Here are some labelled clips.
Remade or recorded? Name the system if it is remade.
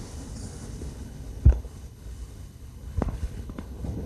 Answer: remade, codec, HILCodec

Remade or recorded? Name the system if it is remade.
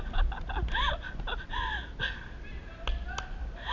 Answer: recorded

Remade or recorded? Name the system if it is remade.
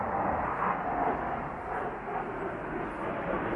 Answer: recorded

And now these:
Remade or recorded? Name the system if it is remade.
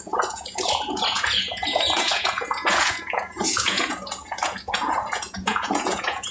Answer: remade, vocoder, Vocos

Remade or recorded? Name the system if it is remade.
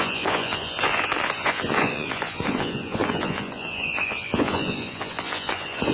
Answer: remade, vocoder, Vocos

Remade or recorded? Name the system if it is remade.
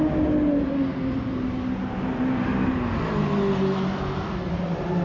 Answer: recorded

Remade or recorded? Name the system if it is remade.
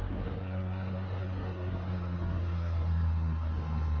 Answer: remade, codec, SNAC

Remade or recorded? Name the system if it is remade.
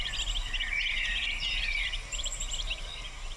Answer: recorded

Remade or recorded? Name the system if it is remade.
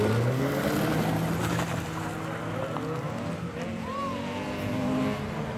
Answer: recorded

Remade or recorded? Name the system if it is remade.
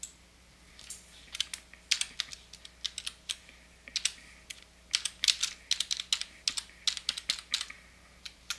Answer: recorded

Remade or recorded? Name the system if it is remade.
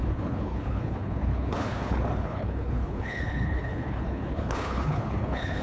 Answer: remade, codec, HILCodec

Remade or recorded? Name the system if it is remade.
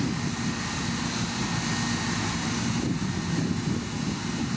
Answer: recorded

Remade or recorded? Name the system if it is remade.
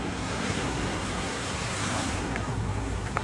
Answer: remade, codec, SNAC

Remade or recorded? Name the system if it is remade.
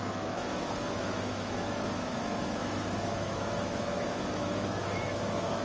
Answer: remade, autoencoder, DAC-VAE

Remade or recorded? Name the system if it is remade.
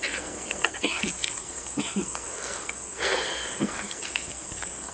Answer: remade, codec, SNAC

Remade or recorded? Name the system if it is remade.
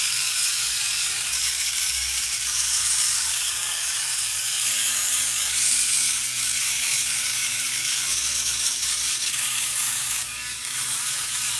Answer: remade, codec, DAC